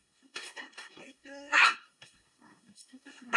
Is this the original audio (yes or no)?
no